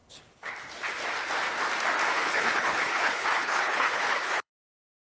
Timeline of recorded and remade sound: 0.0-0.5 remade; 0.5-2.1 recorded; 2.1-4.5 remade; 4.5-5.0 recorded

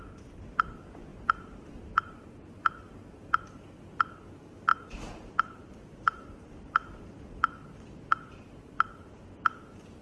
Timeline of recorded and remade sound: 0.0-1.1 recorded; 1.1-3.4 remade; 3.4-4.7 recorded; 4.7-9.2 remade; 9.2-10.0 recorded